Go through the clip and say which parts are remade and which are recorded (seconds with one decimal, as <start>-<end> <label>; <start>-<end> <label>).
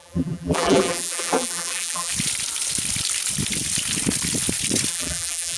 0.0-2.1 remade; 2.1-4.9 recorded; 4.9-5.6 remade